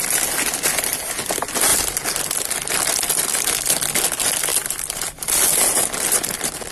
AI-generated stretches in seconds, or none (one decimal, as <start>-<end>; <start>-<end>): 1.7-3.4; 4.5-5.3